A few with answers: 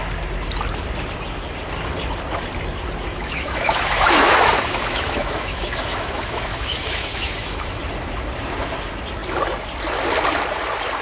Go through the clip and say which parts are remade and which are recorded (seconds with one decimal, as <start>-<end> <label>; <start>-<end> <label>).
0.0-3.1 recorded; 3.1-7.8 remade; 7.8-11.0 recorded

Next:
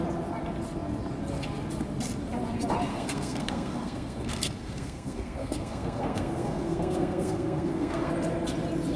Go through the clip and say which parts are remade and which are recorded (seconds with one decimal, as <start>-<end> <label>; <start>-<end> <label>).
0.0-2.9 recorded; 2.9-8.1 remade; 8.1-9.0 recorded

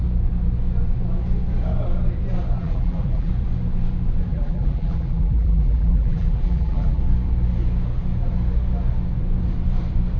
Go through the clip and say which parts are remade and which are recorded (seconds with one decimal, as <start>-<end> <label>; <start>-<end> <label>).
0.0-2.6 recorded; 2.6-3.3 remade; 3.3-4.3 recorded; 4.3-7.0 remade; 7.0-10.2 recorded

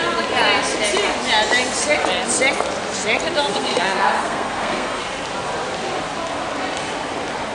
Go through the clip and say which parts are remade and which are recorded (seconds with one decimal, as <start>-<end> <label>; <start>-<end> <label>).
0.0-3.5 recorded; 3.5-5.0 remade; 5.0-7.5 recorded

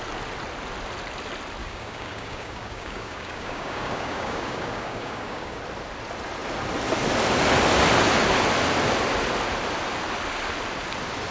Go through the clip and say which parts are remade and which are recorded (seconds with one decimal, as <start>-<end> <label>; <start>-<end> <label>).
0.0-1.6 recorded; 1.6-5.6 remade; 5.6-11.3 recorded

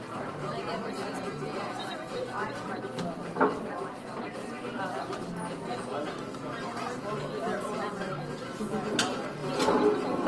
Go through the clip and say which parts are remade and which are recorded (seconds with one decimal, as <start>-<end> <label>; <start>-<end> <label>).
0.0-10.3 recorded

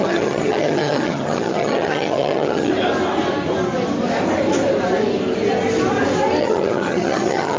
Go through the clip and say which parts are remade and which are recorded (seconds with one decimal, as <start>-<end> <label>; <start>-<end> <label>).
0.0-2.7 remade; 2.7-6.4 recorded; 6.4-7.6 remade

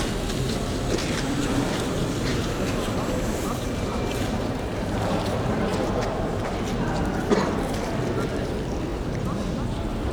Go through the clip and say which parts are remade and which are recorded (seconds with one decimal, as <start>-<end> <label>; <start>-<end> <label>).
0.0-1.0 recorded; 1.0-5.9 remade; 5.9-10.1 recorded